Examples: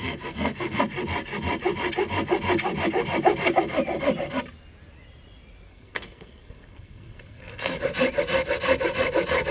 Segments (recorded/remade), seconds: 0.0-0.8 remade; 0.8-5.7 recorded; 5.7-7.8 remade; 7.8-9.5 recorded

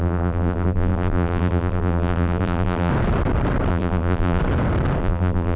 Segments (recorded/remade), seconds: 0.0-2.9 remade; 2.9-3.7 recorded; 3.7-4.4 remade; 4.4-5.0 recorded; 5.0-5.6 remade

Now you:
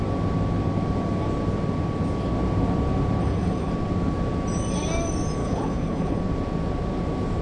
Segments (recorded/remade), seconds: 0.0-3.2 recorded; 3.2-3.7 remade; 3.7-5.4 recorded; 5.4-6.2 remade; 6.2-7.4 recorded